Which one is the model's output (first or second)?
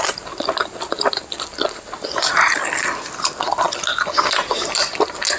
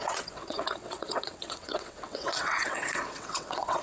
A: second